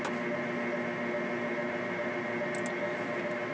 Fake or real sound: real